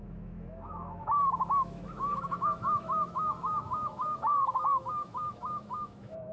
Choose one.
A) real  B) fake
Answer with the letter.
B